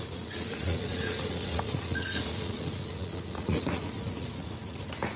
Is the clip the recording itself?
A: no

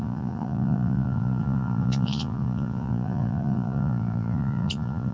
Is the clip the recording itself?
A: no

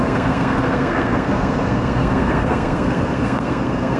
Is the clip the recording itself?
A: no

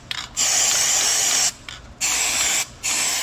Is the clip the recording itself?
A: yes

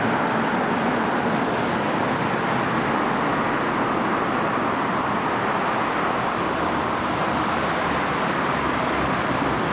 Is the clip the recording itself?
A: yes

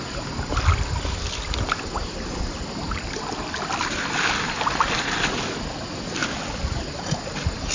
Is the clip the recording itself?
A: yes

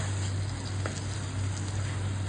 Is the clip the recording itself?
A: yes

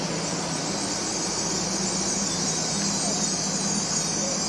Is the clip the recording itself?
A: yes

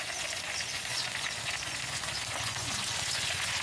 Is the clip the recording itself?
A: no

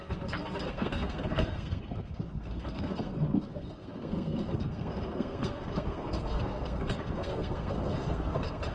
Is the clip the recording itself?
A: no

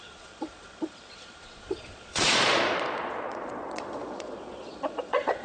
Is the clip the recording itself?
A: no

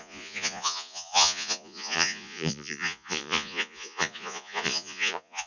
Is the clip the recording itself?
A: no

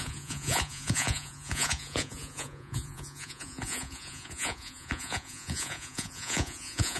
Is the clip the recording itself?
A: no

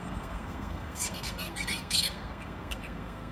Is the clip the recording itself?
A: no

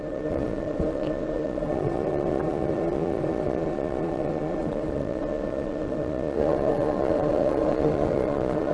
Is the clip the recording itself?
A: no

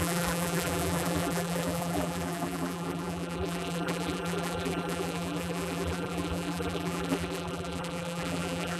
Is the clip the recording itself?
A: no